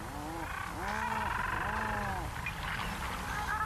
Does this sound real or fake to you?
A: real